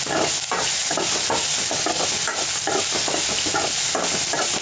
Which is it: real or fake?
real